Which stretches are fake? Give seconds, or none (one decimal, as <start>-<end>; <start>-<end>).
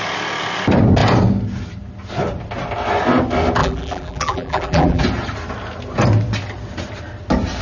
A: 3.6-5.0